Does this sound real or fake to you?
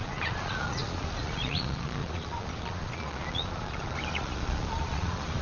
fake